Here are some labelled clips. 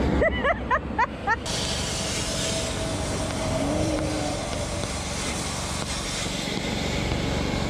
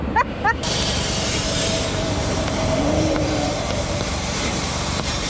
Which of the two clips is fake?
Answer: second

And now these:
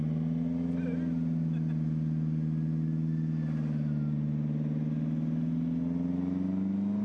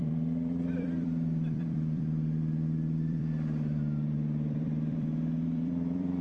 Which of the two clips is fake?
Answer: second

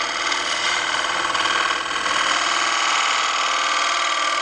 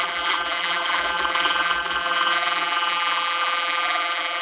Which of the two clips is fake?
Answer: second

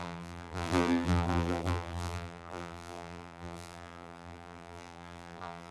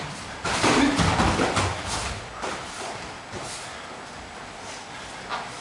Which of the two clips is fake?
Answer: first